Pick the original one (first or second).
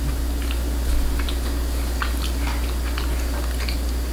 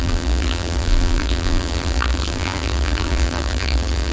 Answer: first